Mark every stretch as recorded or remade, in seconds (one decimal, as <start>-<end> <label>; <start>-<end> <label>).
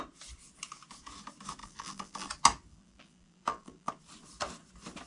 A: 0.0-1.6 recorded; 1.6-2.3 remade; 2.3-2.7 recorded; 2.7-3.9 remade; 3.9-5.1 recorded